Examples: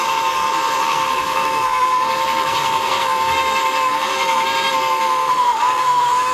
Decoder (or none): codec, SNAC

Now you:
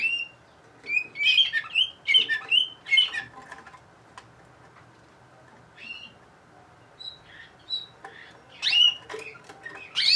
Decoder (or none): none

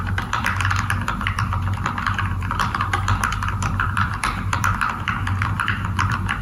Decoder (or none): vocoder, BigVGAN v2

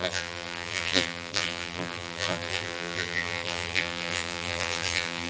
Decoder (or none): vocoder, BigVGAN v2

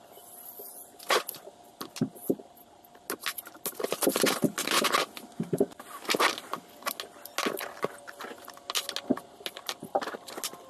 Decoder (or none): none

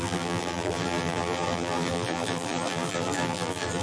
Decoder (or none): vocoder, BigVGAN v2